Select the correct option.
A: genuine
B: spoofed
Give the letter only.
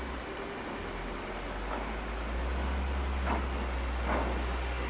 A